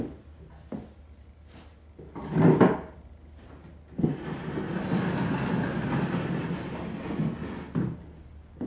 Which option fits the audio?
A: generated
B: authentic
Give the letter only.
B